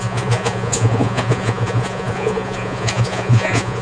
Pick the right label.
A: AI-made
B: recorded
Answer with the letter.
A